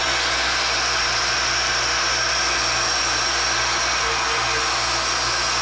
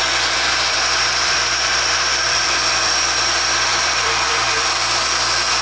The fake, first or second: second